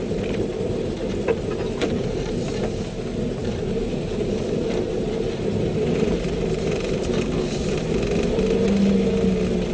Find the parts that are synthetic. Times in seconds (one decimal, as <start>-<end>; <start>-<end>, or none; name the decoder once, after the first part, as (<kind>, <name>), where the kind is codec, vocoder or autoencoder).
1.3-2.6 (vocoder, BigVGAN v2); 3.4-7.2